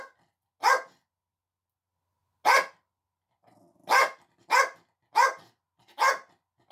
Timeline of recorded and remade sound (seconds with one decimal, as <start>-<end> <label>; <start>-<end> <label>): 0.0-6.7 recorded